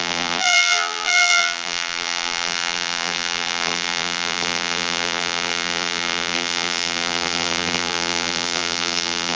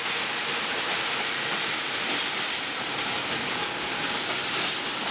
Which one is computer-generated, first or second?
first